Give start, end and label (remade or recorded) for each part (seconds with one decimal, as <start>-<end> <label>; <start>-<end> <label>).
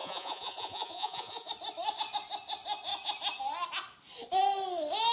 0.0-1.5 remade; 1.5-5.1 recorded